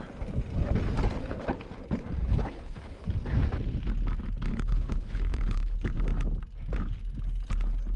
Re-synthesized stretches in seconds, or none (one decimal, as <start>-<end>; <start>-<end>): 2.2-3.1; 4.5-5.9